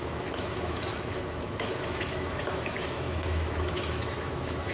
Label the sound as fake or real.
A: fake